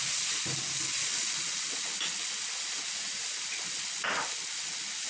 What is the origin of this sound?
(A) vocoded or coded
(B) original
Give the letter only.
B